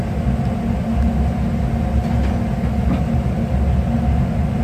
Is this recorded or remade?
recorded